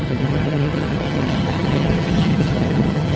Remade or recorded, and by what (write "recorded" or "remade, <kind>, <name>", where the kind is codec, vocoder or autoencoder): remade, vocoder, HiFi-GAN